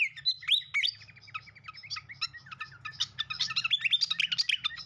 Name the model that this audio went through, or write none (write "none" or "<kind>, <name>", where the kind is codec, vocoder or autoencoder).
none